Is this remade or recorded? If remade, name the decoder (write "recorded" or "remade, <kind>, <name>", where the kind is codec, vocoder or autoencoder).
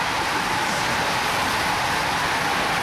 recorded